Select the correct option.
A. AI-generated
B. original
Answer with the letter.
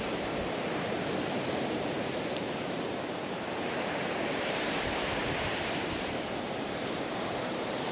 A